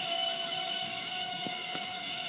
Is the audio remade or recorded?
remade